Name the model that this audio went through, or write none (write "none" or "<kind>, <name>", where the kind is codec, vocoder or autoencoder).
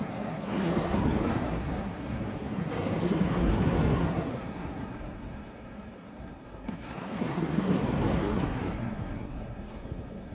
codec, SNAC